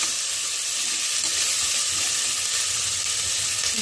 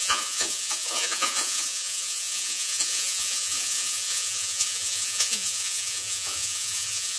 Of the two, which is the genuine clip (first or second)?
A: first